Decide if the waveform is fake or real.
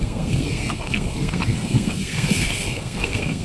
fake